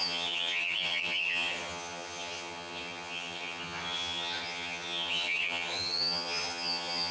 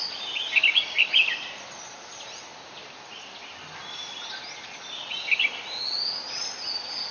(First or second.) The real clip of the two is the second